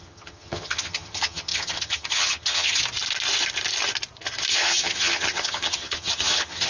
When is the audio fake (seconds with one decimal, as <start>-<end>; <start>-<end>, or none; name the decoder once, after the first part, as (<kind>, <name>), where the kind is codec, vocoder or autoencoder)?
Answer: 0.0-2.8 (vocoder, HiFi-GAN); 4.5-6.7